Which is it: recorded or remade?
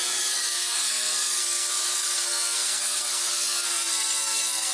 remade